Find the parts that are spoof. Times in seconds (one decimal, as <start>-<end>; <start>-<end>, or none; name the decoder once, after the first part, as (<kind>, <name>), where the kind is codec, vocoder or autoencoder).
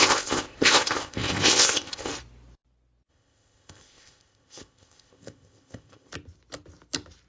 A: 0.0-2.1 (codec, ZipCodec); 3.1-6.1